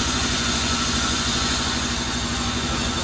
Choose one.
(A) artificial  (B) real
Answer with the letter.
A